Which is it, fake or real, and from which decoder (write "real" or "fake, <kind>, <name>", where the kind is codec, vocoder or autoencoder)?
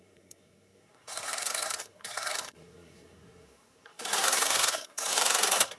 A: fake, codec, SNAC